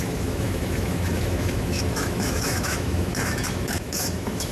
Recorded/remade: remade